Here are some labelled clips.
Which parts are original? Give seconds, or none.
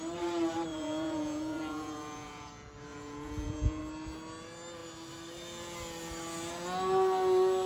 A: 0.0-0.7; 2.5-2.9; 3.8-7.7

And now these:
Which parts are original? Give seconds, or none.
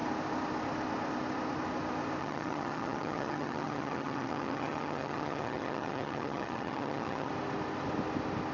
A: 0.0-2.2; 7.3-8.5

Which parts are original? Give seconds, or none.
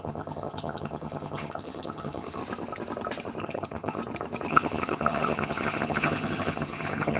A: 2.4-3.4; 4.0-4.5